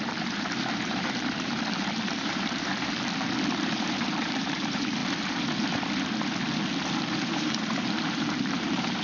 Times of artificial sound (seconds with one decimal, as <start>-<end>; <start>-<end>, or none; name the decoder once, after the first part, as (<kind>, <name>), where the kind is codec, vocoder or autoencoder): 0.0-2.7 (vocoder, BigVGAN v2); 3.5-5.0; 7.0-9.0